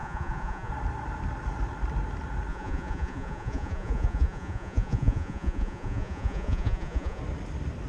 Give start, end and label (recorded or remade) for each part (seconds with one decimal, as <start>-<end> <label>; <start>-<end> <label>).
0.0-0.7 remade; 0.7-2.5 recorded; 2.5-7.2 remade; 7.2-7.9 recorded